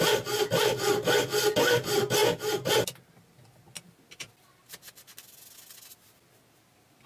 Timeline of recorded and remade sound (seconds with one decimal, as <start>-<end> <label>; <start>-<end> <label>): 0.0-7.1 recorded